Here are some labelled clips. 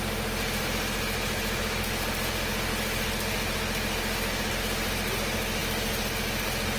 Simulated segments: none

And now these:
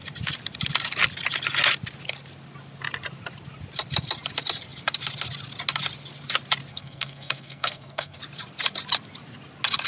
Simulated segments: 6.7-8.2

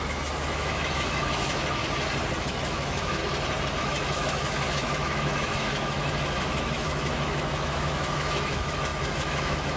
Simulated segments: 0.0-1.8; 2.4-3.2; 3.8-9.8

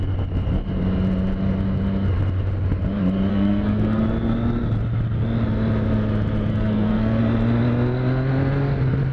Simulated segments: 3.3-4.0; 6.5-7.2

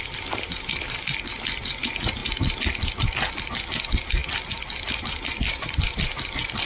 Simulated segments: none